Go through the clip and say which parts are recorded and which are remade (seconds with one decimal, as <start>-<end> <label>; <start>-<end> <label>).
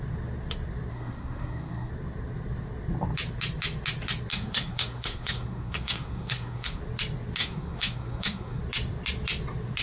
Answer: 0.0-0.9 recorded; 0.9-1.9 remade; 1.9-4.3 recorded; 4.3-6.8 remade; 6.8-7.4 recorded; 7.4-8.6 remade; 8.6-9.8 recorded